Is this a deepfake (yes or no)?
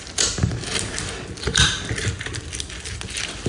yes